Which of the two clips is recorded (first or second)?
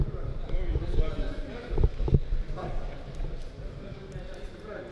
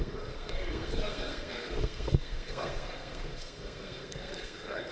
first